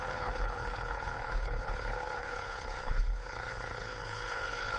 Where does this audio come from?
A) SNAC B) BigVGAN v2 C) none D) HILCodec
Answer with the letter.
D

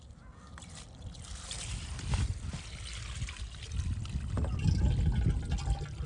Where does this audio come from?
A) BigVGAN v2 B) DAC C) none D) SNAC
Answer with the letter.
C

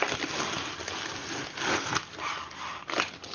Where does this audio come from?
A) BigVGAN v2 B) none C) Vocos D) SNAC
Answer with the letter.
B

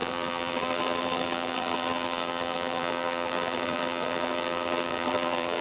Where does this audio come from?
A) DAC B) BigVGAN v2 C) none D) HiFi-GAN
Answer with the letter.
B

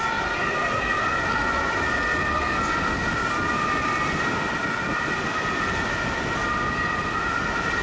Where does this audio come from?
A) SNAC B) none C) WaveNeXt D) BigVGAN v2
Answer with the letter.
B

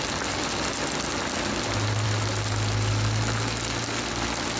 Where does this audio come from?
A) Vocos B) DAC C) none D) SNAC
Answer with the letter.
C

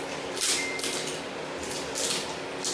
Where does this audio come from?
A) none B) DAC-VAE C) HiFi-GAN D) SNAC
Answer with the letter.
A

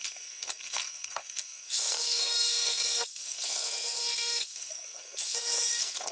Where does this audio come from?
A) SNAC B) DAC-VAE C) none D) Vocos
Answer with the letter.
A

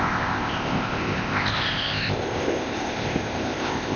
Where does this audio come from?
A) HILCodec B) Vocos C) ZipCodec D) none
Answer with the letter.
C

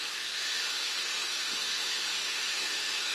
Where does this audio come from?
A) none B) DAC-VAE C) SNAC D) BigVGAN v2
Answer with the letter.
B